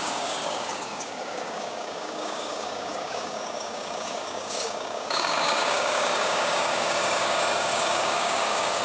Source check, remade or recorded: remade